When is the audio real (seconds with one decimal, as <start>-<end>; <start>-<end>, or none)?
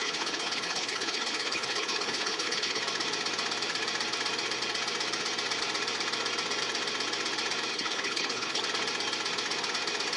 2.8-7.7; 8.6-10.2